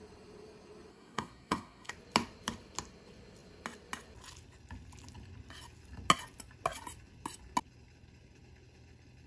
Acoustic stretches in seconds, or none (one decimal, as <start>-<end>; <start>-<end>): 0.0-0.9; 1.9-9.3